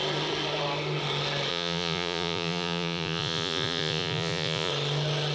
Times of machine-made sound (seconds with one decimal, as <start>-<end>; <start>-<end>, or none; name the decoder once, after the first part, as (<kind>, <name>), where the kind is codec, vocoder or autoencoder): 1.5-4.7 (vocoder, Vocos)